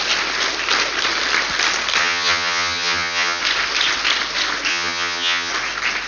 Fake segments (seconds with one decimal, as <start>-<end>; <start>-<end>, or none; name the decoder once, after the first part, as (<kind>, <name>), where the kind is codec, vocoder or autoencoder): 2.0-3.4 (vocoder, HiFi-GAN); 4.7-5.5